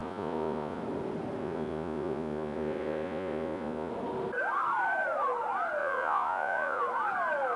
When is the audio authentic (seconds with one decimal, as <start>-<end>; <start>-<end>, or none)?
0.8-1.4; 3.9-5.8; 6.8-7.6